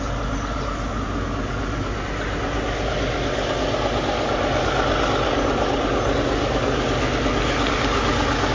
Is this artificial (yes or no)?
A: no